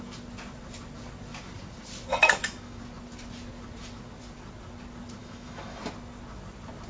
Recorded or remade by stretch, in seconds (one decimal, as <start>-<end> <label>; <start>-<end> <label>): 0.0-2.1 recorded; 2.1-2.8 remade; 2.8-5.2 recorded; 5.2-5.8 remade; 5.8-6.9 recorded